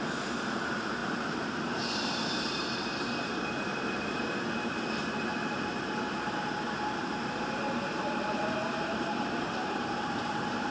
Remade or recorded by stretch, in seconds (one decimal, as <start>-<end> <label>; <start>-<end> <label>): 0.0-10.7 remade